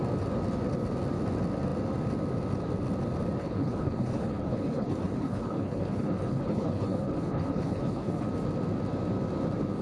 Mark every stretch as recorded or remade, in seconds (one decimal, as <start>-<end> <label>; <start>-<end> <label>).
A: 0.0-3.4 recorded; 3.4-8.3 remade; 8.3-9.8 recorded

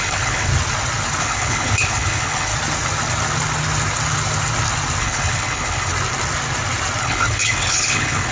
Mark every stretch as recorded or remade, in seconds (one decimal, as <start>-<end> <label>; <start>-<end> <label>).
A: 0.0-0.5 remade; 0.5-1.2 recorded; 1.2-2.5 remade; 2.5-5.0 recorded; 5.0-5.9 remade; 5.9-7.0 recorded; 7.0-8.3 remade

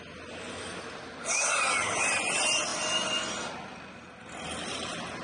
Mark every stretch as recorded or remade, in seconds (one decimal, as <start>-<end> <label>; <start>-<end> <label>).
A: 0.0-5.2 recorded

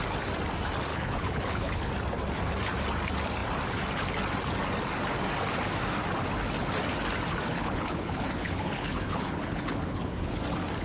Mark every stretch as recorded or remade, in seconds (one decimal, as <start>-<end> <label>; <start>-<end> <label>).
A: 0.0-0.9 recorded; 0.9-1.9 remade; 1.9-7.5 recorded; 7.5-10.4 remade; 10.4-10.8 recorded